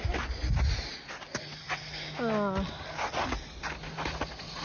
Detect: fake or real real